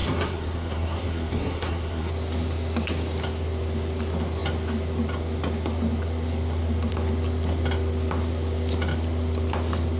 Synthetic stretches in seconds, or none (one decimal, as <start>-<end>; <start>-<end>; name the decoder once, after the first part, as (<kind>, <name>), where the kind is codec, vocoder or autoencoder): 0.0-2.1 (codec, SNAC)